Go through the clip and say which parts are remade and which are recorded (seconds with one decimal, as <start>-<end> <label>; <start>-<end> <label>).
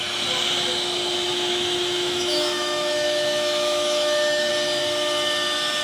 0.0-1.3 recorded; 1.3-4.5 remade; 4.5-5.8 recorded